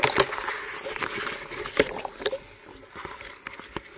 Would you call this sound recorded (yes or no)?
yes